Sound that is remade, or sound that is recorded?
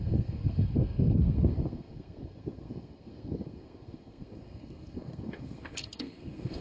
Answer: remade